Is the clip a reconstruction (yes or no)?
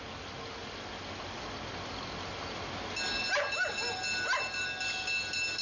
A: no